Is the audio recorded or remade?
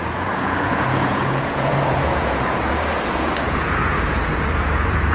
remade